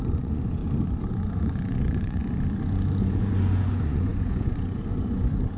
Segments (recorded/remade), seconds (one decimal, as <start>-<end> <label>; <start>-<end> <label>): 0.0-0.6 remade; 0.6-1.1 recorded; 1.1-2.2 remade; 2.2-3.0 recorded; 3.0-5.6 remade